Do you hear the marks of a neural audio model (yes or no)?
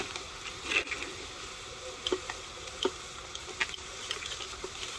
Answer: no